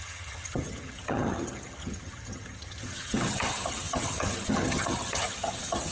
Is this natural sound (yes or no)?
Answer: no